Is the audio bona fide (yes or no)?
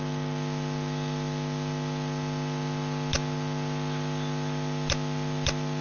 yes